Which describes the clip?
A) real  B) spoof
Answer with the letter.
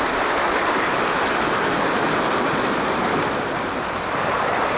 A